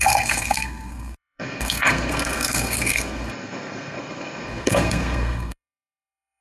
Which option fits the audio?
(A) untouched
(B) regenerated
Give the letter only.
B